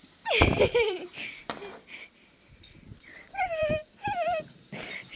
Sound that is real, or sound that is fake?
fake